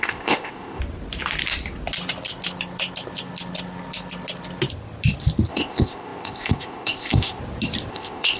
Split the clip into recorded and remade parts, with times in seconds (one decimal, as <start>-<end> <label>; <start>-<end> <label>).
0.0-0.8 remade; 0.8-5.5 recorded; 5.5-7.4 remade; 7.4-7.9 recorded; 7.9-8.4 remade